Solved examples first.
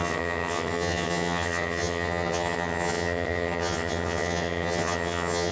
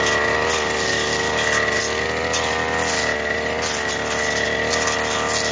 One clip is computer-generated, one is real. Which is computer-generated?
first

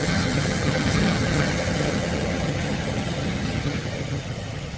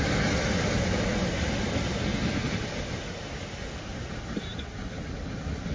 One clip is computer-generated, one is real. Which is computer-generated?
first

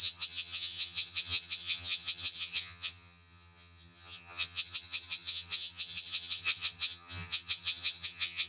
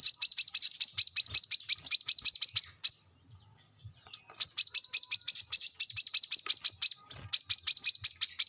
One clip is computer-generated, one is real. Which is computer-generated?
first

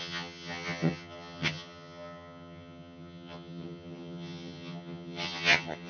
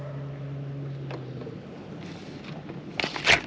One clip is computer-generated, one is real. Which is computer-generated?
first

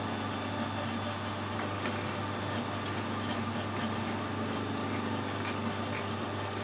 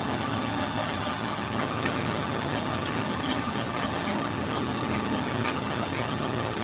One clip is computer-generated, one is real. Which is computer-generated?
second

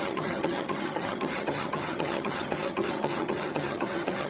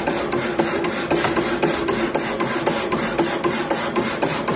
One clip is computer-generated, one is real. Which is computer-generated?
first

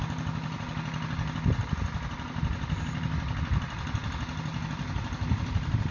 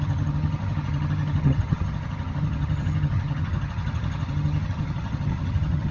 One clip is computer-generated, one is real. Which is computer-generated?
second